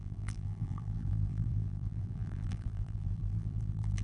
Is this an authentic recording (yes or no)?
no